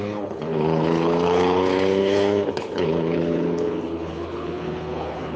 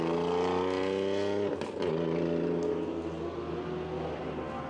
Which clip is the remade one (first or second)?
first